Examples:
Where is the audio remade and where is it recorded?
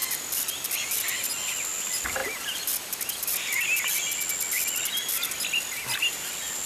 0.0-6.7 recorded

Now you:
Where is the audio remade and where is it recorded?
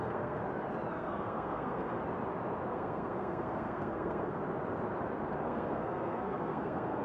0.0-0.4 remade; 0.4-0.9 recorded; 0.9-2.0 remade; 2.0-2.7 recorded; 2.7-4.4 remade; 4.4-5.4 recorded; 5.4-7.0 remade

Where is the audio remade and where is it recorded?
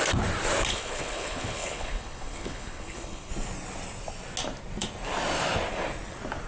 0.0-0.7 recorded; 0.7-3.3 remade; 3.3-6.5 recorded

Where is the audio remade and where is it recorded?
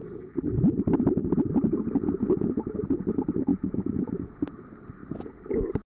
0.0-3.5 recorded; 3.5-4.3 remade; 4.3-5.9 recorded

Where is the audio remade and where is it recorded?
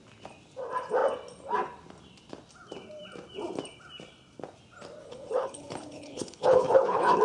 0.0-5.0 recorded; 5.0-7.2 remade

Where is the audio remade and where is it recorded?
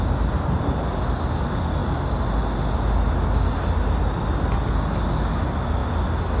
0.0-6.4 recorded